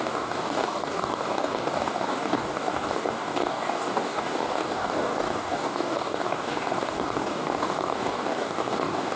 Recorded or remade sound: remade